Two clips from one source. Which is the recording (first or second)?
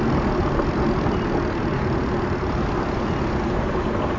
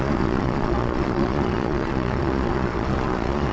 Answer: first